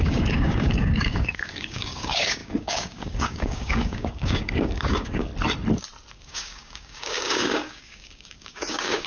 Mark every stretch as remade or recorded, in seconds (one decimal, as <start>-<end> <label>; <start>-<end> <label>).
0.0-5.3 remade; 5.3-6.1 recorded; 6.1-9.1 remade